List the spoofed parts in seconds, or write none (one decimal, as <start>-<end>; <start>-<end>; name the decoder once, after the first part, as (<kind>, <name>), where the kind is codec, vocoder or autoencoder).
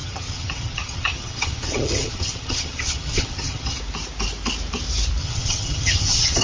0.0-3.8 (vocoder, HiFi-GAN); 5.2-6.4